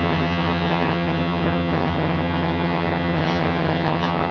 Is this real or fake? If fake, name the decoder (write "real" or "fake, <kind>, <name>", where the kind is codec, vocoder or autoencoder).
fake, vocoder, HiFi-GAN